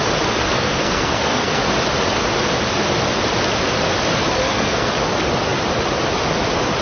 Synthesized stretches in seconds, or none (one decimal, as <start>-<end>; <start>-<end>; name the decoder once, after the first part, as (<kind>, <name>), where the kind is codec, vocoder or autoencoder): 0.4-1.6 (codec, SNAC); 4.4-4.9